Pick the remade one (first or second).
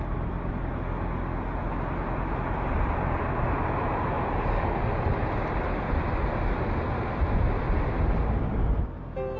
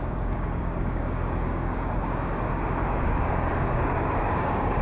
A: second